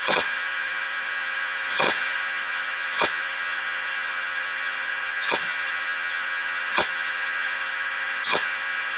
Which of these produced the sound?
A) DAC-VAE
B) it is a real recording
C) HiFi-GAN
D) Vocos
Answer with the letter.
C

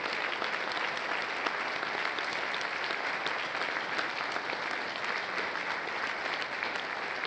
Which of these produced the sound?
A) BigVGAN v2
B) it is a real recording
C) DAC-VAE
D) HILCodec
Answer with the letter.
B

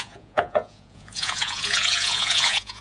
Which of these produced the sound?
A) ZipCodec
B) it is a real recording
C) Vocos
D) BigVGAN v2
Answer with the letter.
C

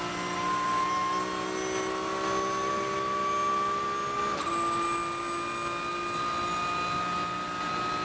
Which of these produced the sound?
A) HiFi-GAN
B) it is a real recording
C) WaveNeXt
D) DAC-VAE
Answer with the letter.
B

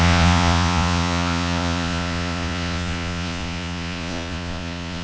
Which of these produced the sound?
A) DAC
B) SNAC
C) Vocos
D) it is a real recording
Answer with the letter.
C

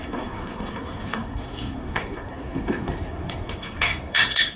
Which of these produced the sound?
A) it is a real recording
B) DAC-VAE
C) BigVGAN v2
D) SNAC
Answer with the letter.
D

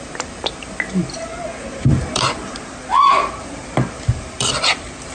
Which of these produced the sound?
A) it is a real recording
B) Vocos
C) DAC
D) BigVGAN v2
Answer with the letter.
D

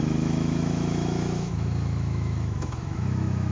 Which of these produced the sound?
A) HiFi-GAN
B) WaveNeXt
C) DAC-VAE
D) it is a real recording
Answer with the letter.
C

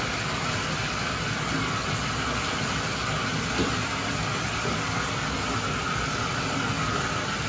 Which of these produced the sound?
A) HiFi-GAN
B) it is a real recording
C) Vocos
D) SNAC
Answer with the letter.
B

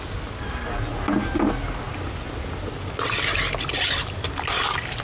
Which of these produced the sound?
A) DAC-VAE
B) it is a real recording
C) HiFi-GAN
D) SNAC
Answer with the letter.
B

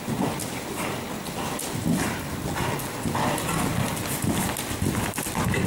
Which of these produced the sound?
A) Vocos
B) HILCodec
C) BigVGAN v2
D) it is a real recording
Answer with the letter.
D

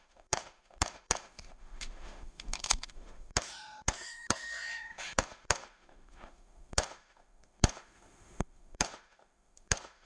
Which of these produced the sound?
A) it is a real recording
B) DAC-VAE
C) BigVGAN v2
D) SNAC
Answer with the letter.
B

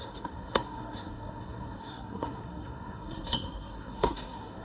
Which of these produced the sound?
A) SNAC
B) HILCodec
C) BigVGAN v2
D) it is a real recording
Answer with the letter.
A